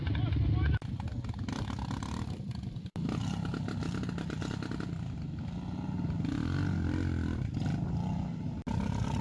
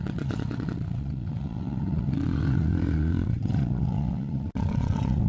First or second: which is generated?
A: second